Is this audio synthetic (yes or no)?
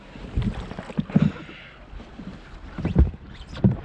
no